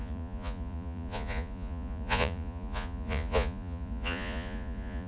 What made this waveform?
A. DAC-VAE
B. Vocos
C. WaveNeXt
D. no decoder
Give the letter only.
B